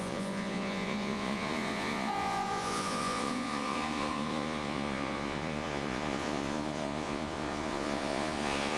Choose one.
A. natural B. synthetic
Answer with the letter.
B